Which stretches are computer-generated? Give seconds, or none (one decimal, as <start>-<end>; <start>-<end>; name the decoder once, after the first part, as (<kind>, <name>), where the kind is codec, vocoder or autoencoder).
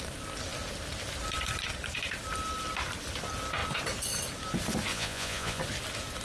4.9-5.6 (vocoder, Vocos)